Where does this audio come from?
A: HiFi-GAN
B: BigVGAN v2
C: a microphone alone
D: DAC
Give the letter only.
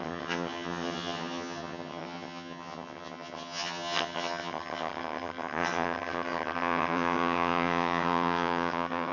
A